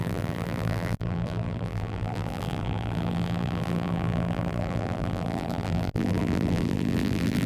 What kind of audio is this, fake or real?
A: fake